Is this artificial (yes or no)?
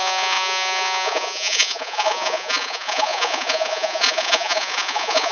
yes